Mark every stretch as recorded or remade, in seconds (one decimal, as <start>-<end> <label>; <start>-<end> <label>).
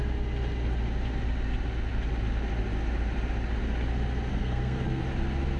0.0-4.3 recorded; 4.3-5.0 remade; 5.0-5.6 recorded